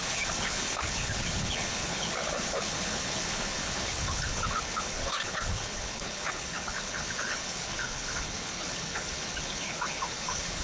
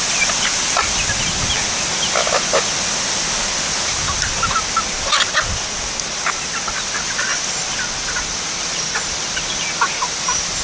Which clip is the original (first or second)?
second